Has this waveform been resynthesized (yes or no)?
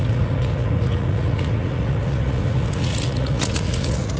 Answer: yes